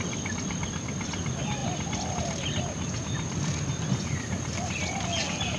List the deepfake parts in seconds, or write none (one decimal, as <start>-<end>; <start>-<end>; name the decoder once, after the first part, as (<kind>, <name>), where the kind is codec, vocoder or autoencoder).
none